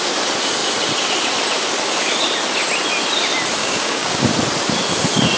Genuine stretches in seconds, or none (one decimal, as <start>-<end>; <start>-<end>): 0.0-3.6; 4.2-5.4

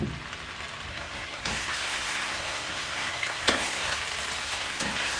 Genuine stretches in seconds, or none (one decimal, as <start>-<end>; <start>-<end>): 0.0-0.9; 4.0-4.4

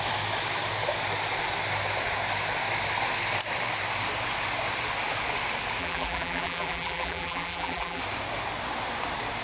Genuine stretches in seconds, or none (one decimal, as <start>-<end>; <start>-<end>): 0.0-5.8; 8.0-9.4

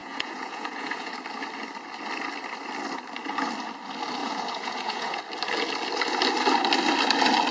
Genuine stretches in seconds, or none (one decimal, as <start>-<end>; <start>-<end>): 1.1-4.2; 5.2-7.5

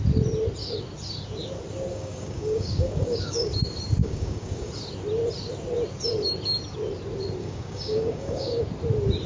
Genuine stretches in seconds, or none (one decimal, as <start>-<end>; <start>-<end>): 0.0-1.9; 3.5-4.0; 4.7-7.4; 8.6-9.3

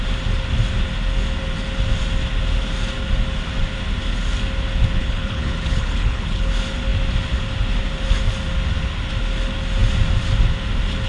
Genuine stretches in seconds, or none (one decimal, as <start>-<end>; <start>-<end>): 0.0-5.0; 6.5-11.1

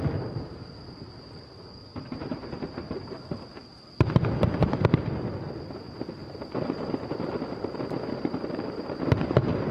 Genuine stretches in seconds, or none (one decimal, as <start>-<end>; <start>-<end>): 0.0-1.9; 3.1-6.2

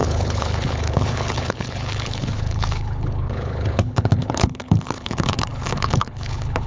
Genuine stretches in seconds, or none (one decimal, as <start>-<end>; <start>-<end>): none